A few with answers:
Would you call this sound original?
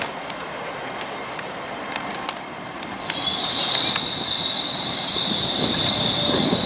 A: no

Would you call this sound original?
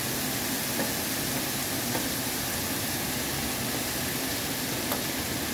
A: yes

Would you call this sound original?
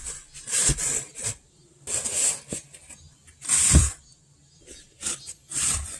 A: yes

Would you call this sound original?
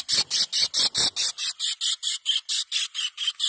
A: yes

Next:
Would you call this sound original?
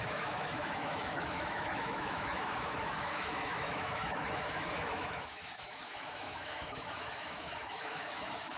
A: no